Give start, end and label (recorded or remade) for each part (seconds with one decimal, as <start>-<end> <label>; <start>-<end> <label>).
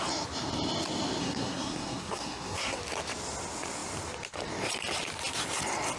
0.0-1.2 recorded; 1.2-2.8 remade; 2.8-6.0 recorded